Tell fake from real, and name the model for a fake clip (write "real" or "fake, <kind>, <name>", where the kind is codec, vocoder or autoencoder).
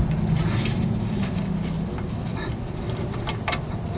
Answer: real